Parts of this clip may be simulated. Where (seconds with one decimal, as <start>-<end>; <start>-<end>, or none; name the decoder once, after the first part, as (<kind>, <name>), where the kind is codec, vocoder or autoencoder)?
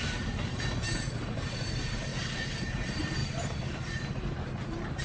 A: 0.0-2.1 (vocoder, BigVGAN v2); 2.7-5.0